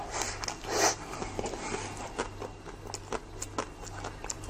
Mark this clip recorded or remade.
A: recorded